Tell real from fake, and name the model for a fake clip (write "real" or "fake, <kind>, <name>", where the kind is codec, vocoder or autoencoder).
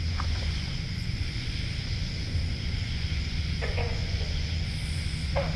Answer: fake, vocoder, Vocos